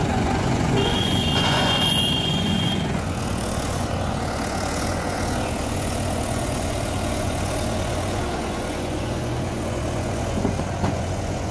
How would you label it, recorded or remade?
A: remade